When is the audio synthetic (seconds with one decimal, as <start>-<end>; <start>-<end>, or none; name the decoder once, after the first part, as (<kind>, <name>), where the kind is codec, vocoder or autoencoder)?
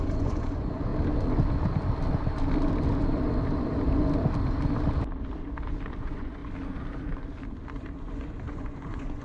0.0-0.9 (vocoder, Vocos); 6.0-6.4; 8.0-9.2